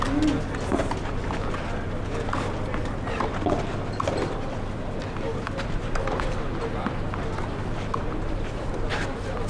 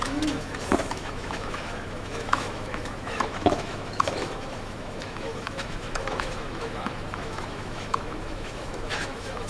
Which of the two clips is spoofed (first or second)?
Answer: second